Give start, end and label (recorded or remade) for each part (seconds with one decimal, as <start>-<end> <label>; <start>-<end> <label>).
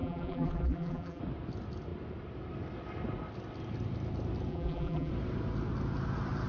0.0-1.2 remade; 1.2-4.5 recorded; 4.5-5.1 remade; 5.1-6.5 recorded